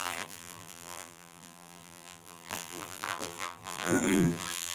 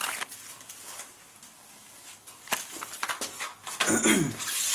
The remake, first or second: first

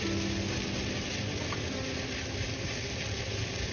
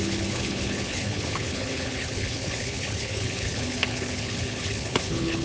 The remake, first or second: second